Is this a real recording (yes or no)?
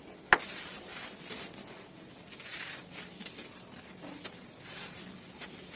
yes